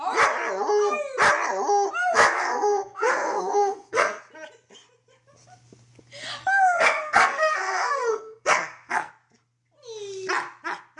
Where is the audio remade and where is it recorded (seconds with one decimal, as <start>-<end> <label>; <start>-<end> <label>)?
0.0-2.0 recorded; 2.0-4.2 remade; 4.2-6.4 recorded; 6.4-9.1 remade; 9.1-11.0 recorded